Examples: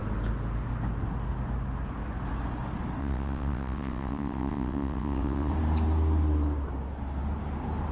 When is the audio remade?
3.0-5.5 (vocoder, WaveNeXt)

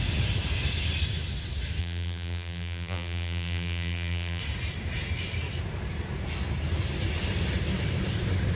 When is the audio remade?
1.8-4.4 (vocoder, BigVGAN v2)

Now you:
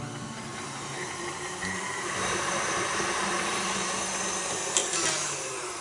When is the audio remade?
0.5-4.0 (vocoder, BigVGAN v2); 4.8-5.8

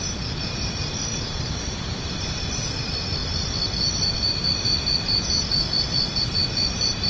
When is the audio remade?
none

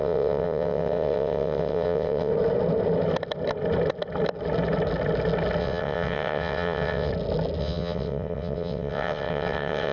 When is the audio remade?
0.0-2.3 (vocoder, WaveNeXt); 5.6-7.1; 7.6-9.9

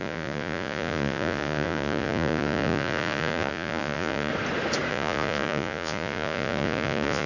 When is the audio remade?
0.0-4.3 (vocoder, Vocos); 4.9-7.3

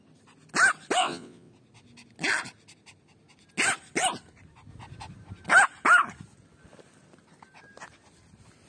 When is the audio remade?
1.0-1.5 (vocoder, WaveNeXt)

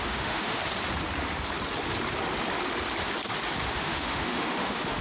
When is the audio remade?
0.0-0.6 (autoencoder, DAC-VAE); 3.6-5.0